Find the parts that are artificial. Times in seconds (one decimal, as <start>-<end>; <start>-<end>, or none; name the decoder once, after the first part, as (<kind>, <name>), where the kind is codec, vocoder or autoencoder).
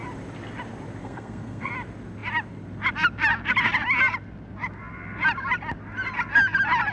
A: 1.0-1.7 (codec, SNAC)